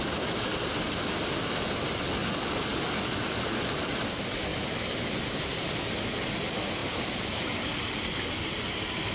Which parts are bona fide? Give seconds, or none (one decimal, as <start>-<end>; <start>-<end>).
0.0-4.5; 5.7-6.8; 7.4-9.1